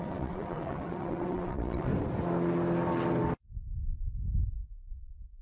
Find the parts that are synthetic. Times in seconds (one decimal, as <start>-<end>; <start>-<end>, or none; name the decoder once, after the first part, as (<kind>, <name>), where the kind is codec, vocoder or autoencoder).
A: 0.0-1.9 (vocoder, WaveNeXt)